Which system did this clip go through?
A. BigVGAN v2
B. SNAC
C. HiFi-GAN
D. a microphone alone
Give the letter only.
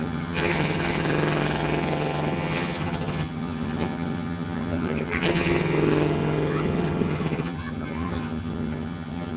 C